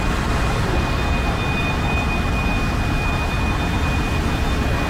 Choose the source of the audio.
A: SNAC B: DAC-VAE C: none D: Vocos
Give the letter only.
C